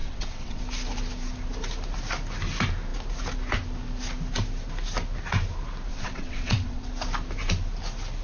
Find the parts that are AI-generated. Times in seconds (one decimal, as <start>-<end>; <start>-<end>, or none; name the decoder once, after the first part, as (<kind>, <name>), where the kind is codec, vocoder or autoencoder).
0.0-0.6 (vocoder, WaveNeXt); 5.9-6.9